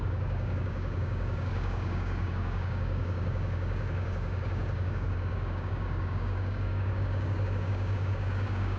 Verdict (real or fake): fake